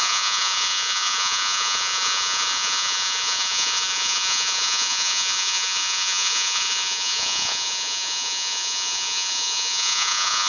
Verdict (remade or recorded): remade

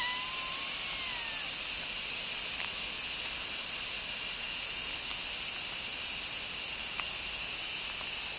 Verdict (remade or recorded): recorded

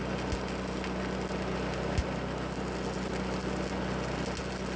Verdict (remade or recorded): recorded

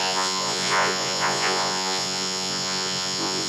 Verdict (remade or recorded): remade